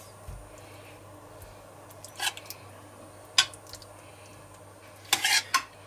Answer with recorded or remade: recorded